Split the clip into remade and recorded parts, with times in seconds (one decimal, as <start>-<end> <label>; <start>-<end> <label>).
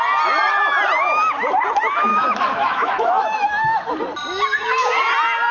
0.0-2.1 recorded; 2.1-3.9 remade; 3.9-5.5 recorded